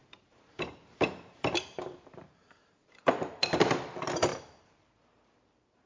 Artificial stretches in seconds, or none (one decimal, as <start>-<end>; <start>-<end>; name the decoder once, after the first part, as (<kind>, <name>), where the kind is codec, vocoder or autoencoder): 0.0-3.5 (vocoder, BigVGAN v2); 4.3-5.9